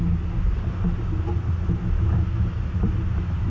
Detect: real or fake real